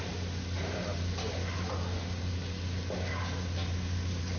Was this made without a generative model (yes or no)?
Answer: yes